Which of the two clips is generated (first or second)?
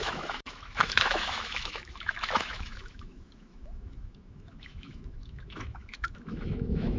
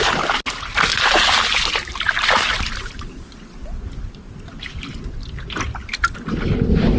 first